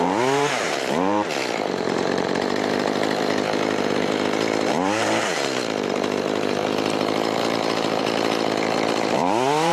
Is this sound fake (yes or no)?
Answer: yes